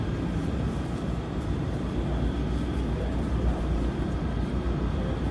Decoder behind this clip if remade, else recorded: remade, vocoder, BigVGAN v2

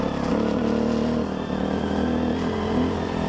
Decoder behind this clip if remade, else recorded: recorded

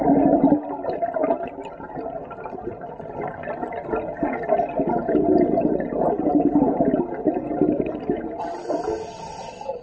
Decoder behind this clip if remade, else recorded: recorded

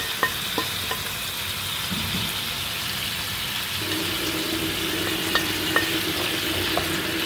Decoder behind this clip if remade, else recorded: recorded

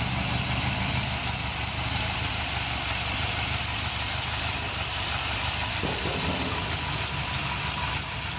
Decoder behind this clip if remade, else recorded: recorded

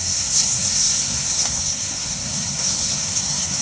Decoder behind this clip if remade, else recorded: remade, codec, SNAC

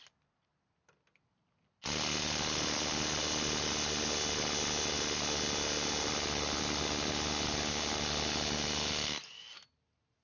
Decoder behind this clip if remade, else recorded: recorded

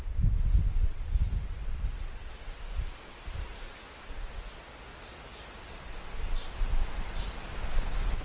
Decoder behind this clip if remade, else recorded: recorded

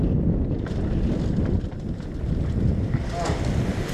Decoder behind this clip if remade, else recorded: recorded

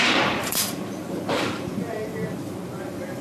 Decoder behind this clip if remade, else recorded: remade, vocoder, BigVGAN v2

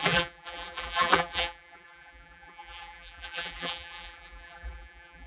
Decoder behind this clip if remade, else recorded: remade, vocoder, BigVGAN v2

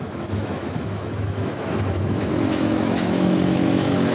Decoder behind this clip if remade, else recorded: remade, autoencoder, DAC-VAE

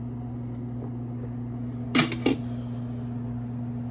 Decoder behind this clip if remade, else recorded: recorded